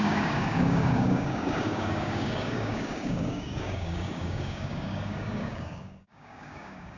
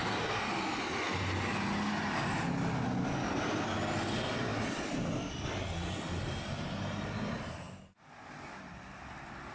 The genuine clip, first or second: second